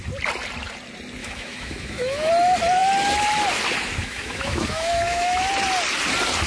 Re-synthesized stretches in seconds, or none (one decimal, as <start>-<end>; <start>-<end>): 1.2-2.3; 4.0-5.5